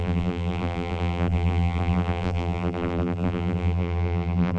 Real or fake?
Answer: fake